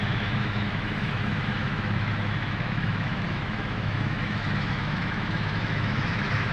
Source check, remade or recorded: remade